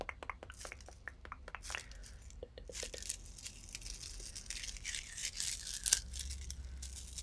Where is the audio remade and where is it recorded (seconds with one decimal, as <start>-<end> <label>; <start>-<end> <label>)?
0.0-7.2 recorded

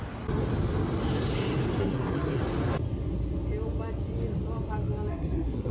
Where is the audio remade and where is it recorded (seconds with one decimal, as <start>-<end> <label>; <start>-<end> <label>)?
0.0-1.8 recorded; 1.8-2.4 remade; 2.4-5.1 recorded; 5.1-5.7 remade

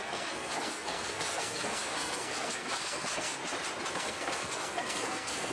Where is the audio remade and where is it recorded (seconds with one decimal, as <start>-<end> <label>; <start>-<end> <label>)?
0.0-3.4 remade; 3.4-3.9 recorded; 3.9-5.5 remade